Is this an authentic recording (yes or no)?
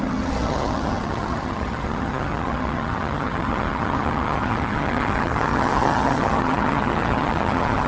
no